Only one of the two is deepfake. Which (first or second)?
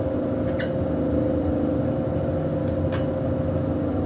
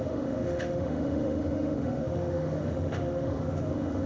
second